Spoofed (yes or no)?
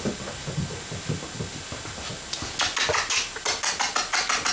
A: no